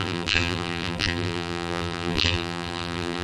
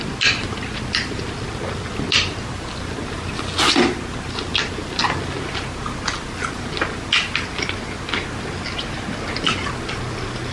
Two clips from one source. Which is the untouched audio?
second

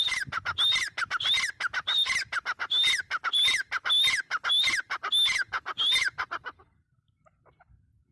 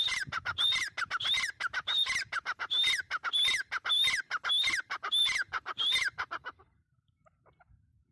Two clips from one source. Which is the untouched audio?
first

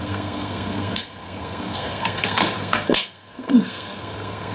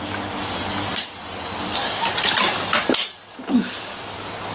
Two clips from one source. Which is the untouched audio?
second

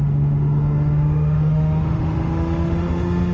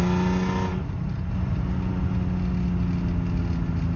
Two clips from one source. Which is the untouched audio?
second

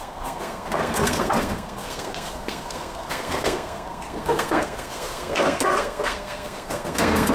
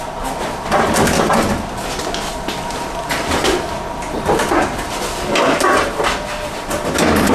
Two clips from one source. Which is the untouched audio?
second